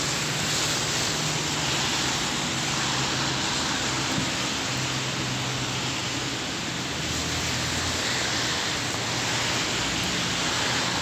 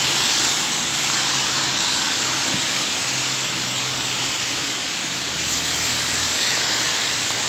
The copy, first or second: second